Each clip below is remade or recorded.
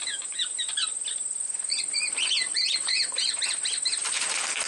recorded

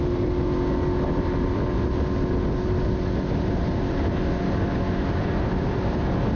recorded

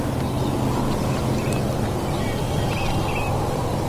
recorded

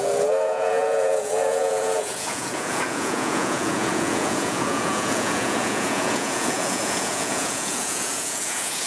remade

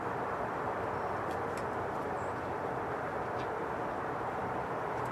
remade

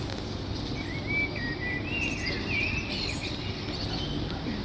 recorded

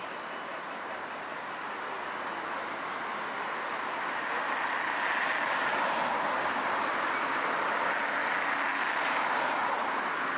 recorded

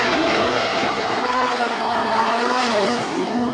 remade